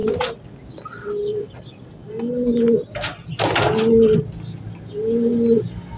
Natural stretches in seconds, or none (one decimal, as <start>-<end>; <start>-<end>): 0.0-6.0